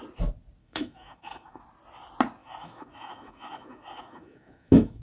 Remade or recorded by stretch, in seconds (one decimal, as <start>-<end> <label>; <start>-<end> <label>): 0.0-0.6 recorded; 0.6-1.6 remade; 1.6-2.4 recorded; 2.4-5.0 remade